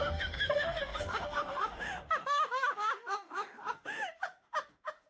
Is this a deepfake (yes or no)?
yes